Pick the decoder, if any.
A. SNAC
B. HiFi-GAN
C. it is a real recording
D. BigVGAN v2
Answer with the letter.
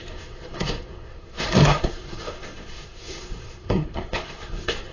A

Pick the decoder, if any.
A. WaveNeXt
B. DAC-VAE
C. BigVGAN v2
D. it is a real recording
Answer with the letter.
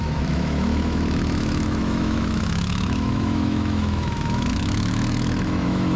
B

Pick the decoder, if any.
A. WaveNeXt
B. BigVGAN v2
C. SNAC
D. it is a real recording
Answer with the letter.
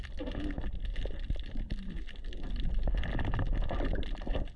D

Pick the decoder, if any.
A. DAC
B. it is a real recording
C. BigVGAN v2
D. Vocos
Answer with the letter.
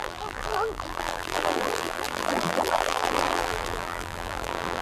C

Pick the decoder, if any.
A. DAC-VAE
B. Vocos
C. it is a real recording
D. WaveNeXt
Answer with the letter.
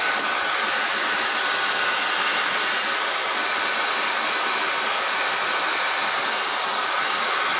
C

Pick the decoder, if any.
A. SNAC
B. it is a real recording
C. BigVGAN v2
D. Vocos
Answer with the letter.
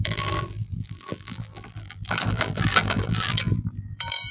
C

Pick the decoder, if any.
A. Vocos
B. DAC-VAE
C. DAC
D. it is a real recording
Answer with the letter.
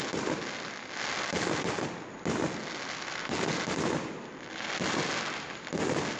D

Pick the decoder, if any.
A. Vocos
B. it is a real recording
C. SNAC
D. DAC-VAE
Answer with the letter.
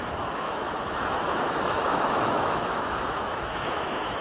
D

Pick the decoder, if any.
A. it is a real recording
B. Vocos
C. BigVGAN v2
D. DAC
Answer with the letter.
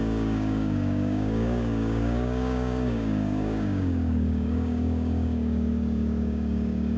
D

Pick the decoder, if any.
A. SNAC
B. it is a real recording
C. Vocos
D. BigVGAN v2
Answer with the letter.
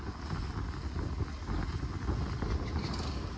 B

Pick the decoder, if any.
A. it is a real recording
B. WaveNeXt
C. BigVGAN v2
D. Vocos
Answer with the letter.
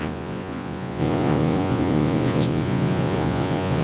D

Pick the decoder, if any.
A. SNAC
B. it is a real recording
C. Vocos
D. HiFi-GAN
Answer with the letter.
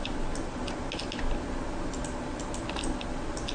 B